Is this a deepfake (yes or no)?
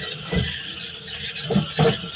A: no